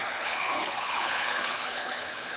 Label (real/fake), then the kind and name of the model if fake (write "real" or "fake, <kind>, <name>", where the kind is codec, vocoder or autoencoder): fake, codec, HILCodec